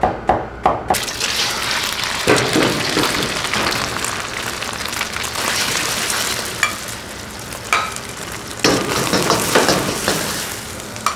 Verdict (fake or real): real